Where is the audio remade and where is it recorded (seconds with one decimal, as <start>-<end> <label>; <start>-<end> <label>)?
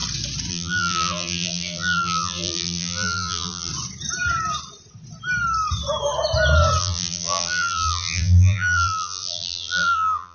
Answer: 0.0-0.5 recorded; 0.5-3.7 remade; 3.7-6.8 recorded; 6.8-10.3 remade